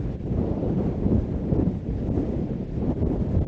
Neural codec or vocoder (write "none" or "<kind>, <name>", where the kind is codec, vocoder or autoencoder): none